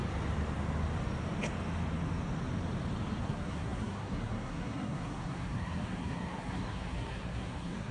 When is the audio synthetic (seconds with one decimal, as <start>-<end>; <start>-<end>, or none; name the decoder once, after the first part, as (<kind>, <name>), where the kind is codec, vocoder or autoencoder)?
3.2-7.9 (codec, SNAC)